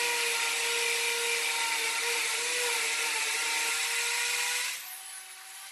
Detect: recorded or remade recorded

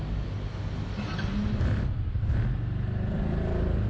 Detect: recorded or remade recorded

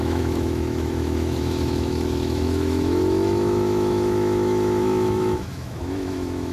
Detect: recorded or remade remade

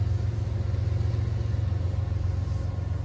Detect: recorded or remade recorded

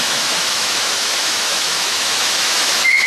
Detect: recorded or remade remade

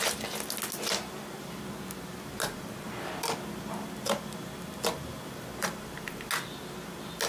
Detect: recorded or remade recorded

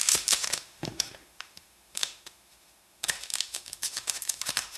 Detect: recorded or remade remade